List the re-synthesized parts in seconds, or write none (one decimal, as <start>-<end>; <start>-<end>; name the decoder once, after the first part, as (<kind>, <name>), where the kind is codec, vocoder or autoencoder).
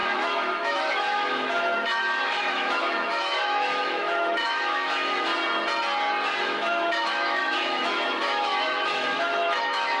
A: 0.0-5.3 (autoencoder, DAC-VAE); 6.4-10.0